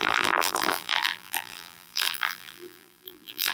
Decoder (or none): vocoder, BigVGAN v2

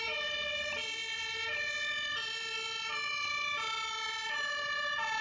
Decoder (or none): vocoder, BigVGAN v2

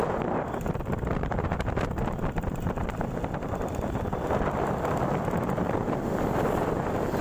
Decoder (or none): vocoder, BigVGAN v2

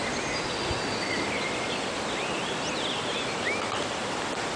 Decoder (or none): none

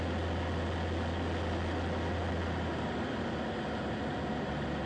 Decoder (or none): none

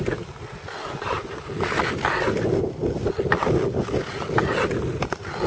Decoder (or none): none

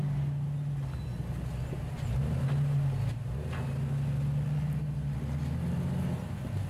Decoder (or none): none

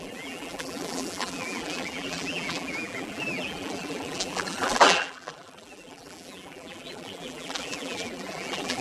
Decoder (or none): vocoder, BigVGAN v2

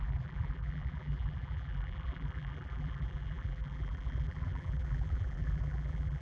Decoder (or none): vocoder, BigVGAN v2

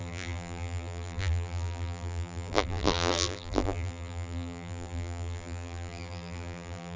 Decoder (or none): vocoder, BigVGAN v2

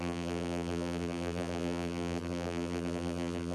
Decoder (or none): vocoder, BigVGAN v2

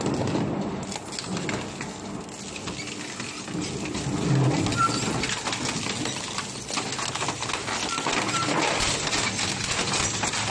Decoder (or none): none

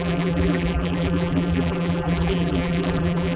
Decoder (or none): vocoder, BigVGAN v2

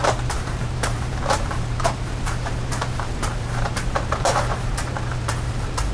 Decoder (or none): vocoder, BigVGAN v2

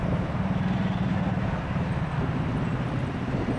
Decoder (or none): vocoder, BigVGAN v2